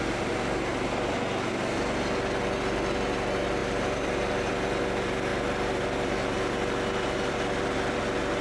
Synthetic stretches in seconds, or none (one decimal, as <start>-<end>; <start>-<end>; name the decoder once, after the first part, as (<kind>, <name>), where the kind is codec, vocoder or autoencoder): 3.6-4.5 (vocoder, BigVGAN v2); 5.3-8.0